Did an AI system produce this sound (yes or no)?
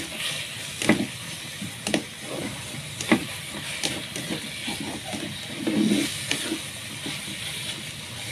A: no